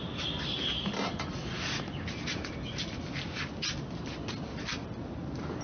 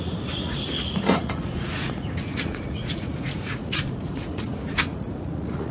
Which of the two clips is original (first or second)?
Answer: first